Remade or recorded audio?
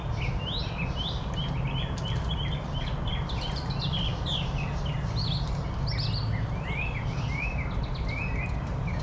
recorded